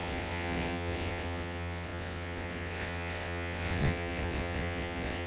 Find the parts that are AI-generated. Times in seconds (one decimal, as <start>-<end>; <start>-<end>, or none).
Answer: 0.0-5.3